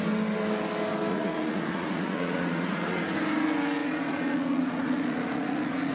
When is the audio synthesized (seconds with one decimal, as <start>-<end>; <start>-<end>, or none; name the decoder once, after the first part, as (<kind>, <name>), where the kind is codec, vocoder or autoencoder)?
1.1-3.0 (vocoder, Vocos); 3.8-5.9